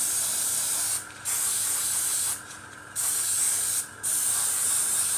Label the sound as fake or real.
real